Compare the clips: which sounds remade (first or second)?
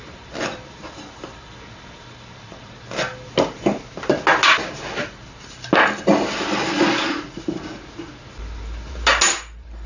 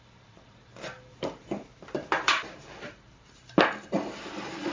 second